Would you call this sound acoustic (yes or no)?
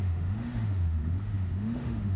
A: no